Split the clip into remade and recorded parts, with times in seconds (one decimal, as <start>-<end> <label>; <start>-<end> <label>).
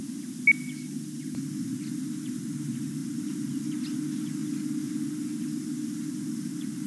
0.0-6.9 recorded